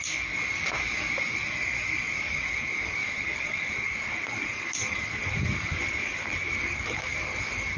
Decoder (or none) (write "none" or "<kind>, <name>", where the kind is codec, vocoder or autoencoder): codec, DAC